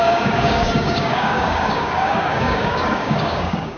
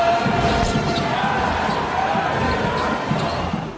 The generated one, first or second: first